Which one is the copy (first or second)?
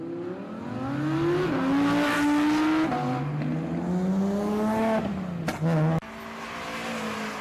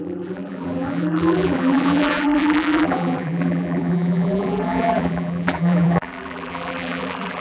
second